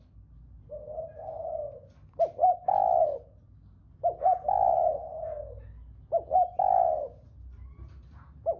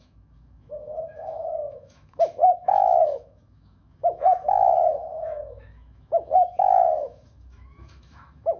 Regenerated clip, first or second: second